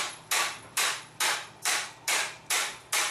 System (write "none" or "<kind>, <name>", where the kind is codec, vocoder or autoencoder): vocoder, BigVGAN v2